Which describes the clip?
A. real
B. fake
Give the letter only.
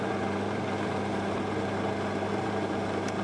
B